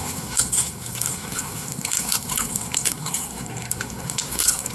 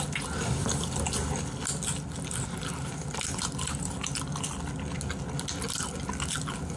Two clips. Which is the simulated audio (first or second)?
first